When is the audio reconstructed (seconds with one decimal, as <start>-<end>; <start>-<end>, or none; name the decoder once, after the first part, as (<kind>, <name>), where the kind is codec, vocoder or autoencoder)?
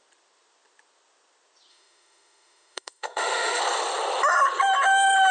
1.7-3.6 (autoencoder, DAC-VAE)